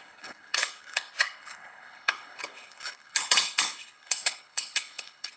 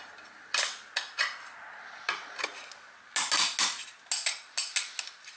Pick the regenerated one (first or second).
first